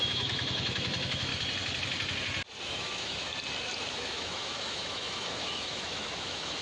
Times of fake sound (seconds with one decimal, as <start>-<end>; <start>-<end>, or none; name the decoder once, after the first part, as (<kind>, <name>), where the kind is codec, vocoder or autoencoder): 0.0-1.3 (autoencoder, DAC-VAE); 2.6-3.3; 3.9-6.6

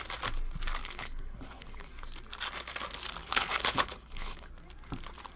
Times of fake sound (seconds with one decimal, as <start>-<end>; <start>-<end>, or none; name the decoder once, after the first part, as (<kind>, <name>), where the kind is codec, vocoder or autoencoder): 0.8-1.9 (codec, HILCodec); 3.2-4.5

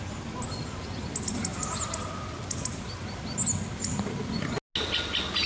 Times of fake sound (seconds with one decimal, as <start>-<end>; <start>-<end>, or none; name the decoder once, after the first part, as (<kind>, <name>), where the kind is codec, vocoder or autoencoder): none

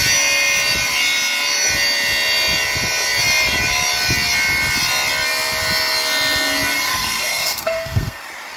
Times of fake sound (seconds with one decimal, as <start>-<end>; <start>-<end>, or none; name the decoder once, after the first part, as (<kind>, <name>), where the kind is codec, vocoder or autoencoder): 6.9-8.2 (codec, SNAC)